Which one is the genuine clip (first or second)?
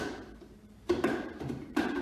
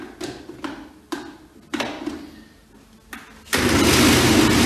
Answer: second